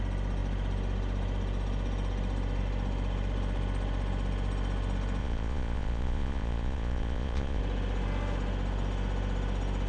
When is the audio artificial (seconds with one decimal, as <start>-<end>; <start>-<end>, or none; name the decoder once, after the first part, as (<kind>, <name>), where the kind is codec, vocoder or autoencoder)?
5.2-7.6 (vocoder, Vocos)